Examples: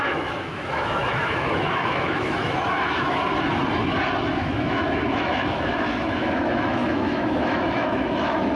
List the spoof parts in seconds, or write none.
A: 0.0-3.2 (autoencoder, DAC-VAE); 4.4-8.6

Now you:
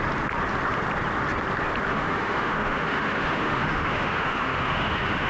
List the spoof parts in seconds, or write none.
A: 1.9-5.3 (autoencoder, DAC-VAE)

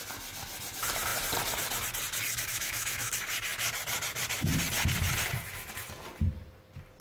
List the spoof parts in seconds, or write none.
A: 2.5-3.1 (autoencoder, DAC-VAE)

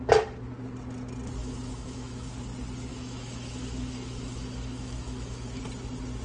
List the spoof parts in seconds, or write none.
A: 1.4-2.3 (autoencoder, DAC-VAE); 2.9-5.6

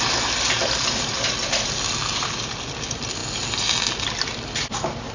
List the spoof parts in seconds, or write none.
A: none

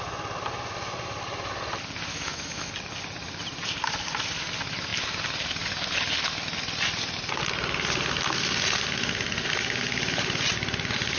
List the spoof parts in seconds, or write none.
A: 2.1-2.7 (autoencoder, DAC-VAE)

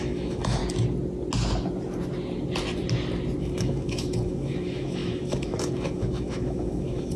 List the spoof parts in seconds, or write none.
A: 0.0-0.6 (autoencoder, DAC-VAE); 3.4-7.2

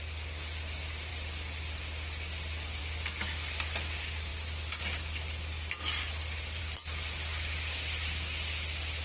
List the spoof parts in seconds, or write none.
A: none